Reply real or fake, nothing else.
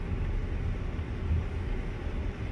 real